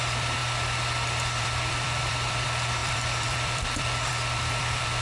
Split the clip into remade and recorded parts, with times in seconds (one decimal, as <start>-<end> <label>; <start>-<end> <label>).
0.0-0.4 remade; 0.4-1.4 recorded; 1.4-5.0 remade

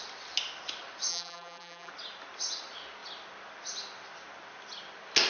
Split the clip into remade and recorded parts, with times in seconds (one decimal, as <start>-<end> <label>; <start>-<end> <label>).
0.0-1.1 recorded; 1.1-1.9 remade; 1.9-5.3 recorded

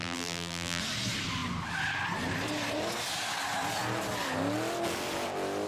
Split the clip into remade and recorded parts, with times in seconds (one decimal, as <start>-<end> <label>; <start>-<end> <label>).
0.0-0.8 remade; 0.8-5.7 recorded

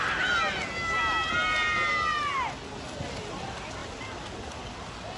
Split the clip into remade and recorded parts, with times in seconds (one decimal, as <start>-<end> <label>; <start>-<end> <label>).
0.0-5.2 recorded

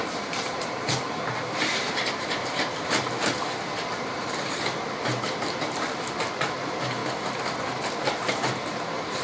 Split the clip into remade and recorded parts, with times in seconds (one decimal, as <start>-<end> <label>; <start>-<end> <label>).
0.0-7.0 remade; 7.0-7.8 recorded; 7.8-9.2 remade

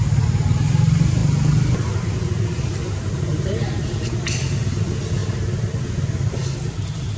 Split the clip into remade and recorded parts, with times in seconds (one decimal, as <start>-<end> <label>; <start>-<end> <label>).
0.0-3.3 recorded; 3.3-4.2 remade; 4.2-5.2 recorded; 5.2-5.9 remade; 5.9-7.2 recorded

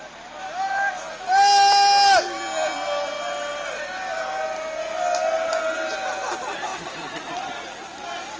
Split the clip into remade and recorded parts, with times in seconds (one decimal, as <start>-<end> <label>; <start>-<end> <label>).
0.0-6.7 recorded; 6.7-7.3 remade; 7.3-8.4 recorded

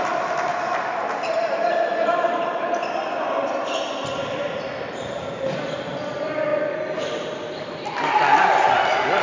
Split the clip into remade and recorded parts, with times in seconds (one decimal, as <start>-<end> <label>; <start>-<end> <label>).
0.0-0.5 remade; 0.5-1.2 recorded; 1.2-9.2 remade